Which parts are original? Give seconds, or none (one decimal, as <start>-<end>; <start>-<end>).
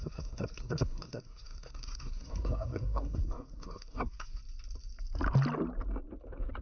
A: 4.4-6.6